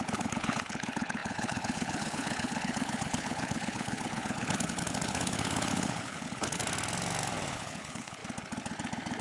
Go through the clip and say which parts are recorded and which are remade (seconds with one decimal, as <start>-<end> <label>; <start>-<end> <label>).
0.0-6.6 remade; 6.6-7.5 recorded; 7.5-8.2 remade; 8.2-9.2 recorded